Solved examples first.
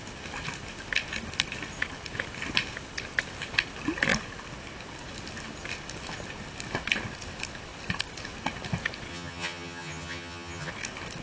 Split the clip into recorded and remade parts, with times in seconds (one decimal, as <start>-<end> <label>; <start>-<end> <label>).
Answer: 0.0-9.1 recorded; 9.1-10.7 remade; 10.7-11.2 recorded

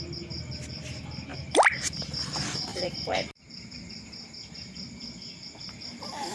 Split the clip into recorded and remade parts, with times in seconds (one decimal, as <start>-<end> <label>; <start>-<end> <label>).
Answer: 0.0-1.3 recorded; 1.3-2.3 remade; 2.3-2.7 recorded; 2.7-4.0 remade; 4.0-6.3 recorded

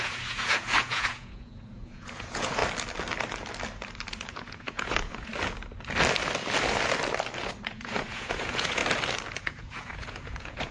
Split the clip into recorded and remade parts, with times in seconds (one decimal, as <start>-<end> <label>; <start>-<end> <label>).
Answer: 0.0-2.6 remade; 2.6-4.3 recorded; 4.3-5.3 remade; 5.3-7.6 recorded; 7.6-8.8 remade; 8.8-9.4 recorded; 9.4-10.7 remade

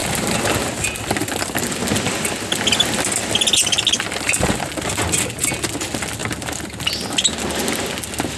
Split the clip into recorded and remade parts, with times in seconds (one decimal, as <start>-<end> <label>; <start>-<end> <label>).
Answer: 0.0-8.4 recorded